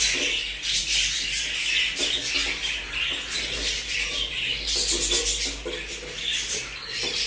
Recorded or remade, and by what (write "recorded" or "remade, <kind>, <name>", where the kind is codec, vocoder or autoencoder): recorded